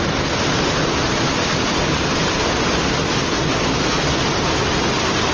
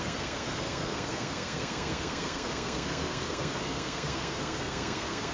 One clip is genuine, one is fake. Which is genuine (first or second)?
first